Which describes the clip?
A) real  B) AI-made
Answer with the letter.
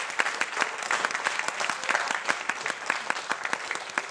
A